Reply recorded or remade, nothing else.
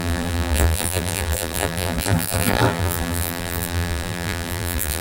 remade